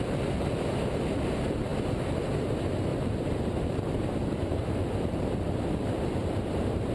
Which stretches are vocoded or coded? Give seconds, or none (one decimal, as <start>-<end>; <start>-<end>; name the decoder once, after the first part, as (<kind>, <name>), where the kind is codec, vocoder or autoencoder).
2.9-4.0 (vocoder, BigVGAN v2); 4.4-6.9